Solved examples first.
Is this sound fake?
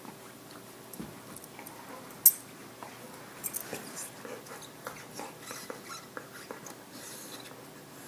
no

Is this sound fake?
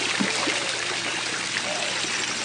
no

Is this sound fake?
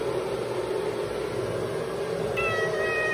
no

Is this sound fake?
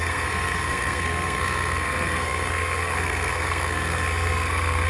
yes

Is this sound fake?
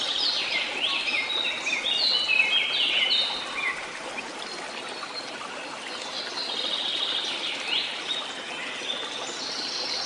no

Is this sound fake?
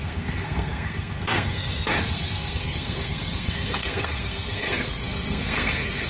yes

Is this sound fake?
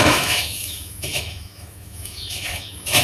yes